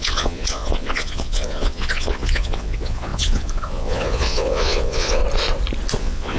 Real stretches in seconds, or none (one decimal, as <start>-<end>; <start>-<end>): 5.2-6.0